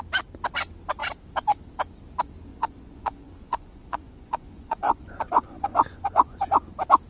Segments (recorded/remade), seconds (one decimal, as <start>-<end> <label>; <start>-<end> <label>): 0.0-2.5 recorded; 2.5-6.4 remade; 6.4-7.1 recorded